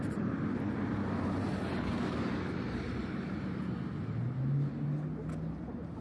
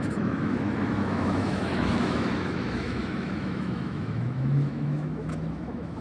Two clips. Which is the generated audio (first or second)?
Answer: second